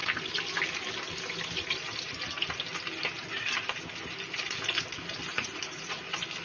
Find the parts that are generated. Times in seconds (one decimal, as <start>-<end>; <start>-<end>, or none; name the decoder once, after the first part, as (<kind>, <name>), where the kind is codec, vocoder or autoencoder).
5.3-6.0 (vocoder, Vocos)